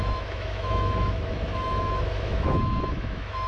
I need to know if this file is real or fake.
fake